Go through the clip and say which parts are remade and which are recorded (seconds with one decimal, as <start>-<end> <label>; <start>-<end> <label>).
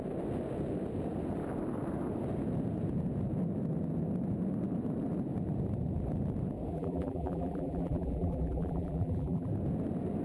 0.0-6.7 recorded; 6.7-9.5 remade; 9.5-10.2 recorded